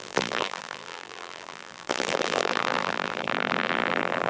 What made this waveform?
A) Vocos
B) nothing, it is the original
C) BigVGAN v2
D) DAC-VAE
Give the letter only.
C